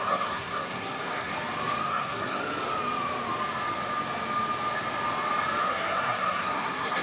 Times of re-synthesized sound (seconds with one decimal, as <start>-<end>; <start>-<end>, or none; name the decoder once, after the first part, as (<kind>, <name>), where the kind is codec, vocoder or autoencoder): 0.0-1.3 (codec, SNAC); 1.9-2.4; 5.6-7.0